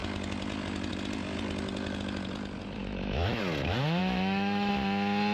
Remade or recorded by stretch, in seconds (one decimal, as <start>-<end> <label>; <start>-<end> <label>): 0.0-2.8 recorded; 2.8-3.4 remade; 3.4-4.0 recorded; 4.0-4.7 remade; 4.7-5.3 recorded